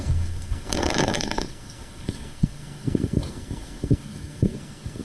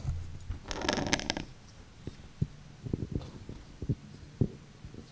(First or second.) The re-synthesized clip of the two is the first